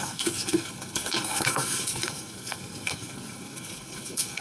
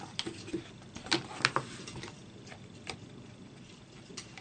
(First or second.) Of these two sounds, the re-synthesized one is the first